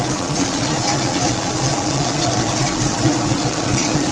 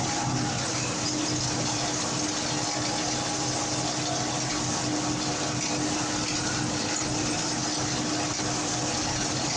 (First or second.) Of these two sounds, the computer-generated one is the first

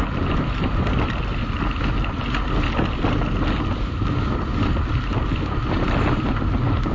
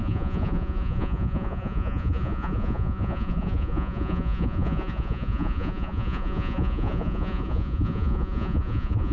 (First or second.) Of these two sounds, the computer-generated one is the second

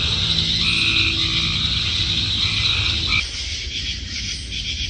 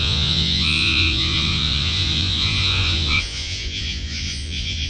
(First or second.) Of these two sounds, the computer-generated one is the second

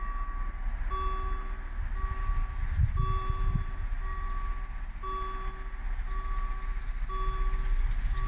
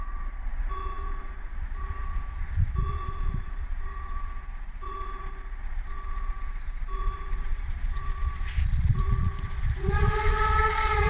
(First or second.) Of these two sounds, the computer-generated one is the second